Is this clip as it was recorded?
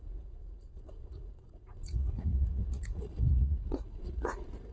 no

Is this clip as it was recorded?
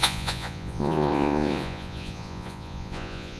no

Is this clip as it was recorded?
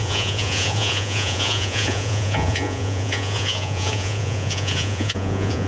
no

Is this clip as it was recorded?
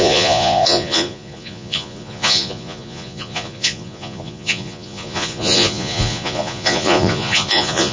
no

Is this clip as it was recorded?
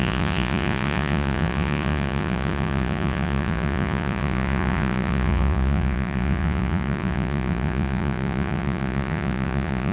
no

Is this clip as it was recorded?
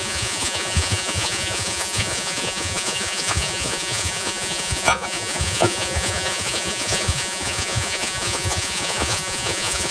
no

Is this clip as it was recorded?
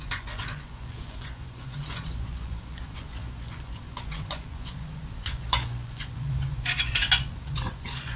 no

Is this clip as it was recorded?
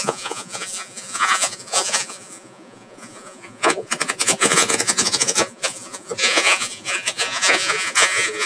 no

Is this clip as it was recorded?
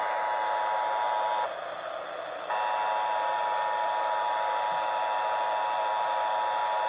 yes